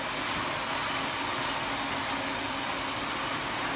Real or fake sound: real